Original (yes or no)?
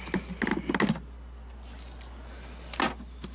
yes